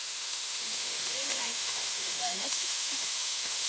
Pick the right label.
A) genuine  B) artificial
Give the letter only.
B